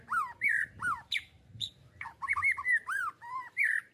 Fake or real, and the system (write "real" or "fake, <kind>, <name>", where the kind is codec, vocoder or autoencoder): fake, vocoder, BigVGAN v2